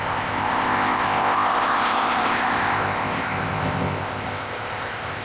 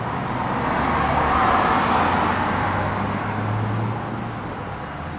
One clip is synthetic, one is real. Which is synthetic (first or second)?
first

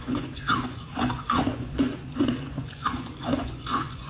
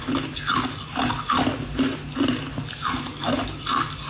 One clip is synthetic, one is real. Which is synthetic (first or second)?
first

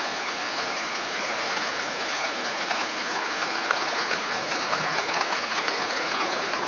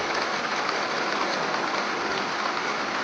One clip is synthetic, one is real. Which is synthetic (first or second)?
first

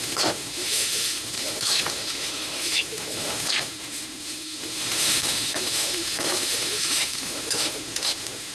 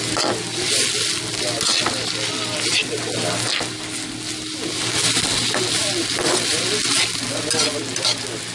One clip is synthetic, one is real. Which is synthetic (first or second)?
first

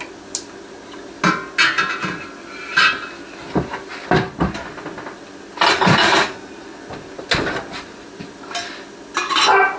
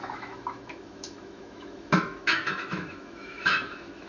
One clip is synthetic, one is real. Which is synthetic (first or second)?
second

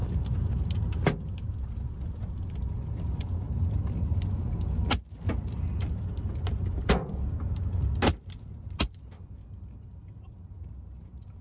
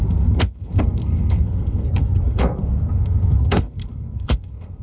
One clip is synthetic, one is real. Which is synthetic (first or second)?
second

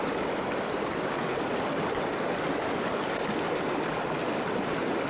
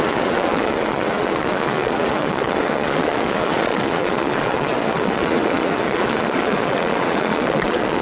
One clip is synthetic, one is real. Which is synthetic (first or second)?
second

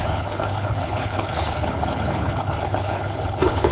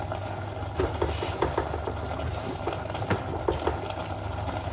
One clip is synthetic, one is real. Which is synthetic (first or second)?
first